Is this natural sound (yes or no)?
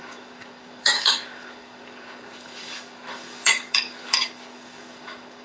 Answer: no